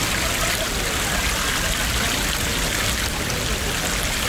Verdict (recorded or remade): recorded